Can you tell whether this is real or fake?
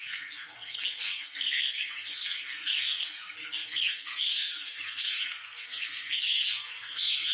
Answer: fake